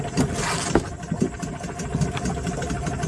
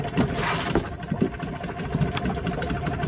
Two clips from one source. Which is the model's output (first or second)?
second